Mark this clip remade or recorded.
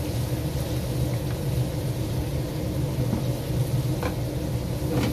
recorded